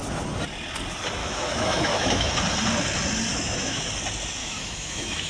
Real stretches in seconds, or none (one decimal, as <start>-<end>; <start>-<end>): 0.0-1.2; 2.3-3.3; 3.8-4.4